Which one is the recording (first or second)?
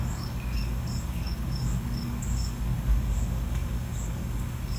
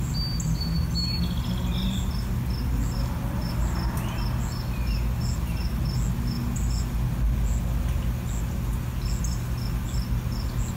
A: second